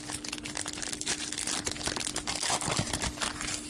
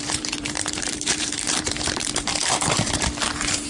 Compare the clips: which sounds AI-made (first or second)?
second